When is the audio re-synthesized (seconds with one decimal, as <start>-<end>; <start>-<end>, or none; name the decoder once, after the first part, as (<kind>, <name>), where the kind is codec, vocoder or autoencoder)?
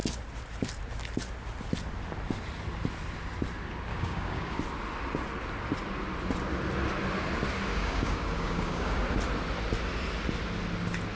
3.9-4.6 (codec, DAC); 7.7-9.0